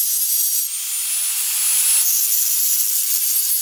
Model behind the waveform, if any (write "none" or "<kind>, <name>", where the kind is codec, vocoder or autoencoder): none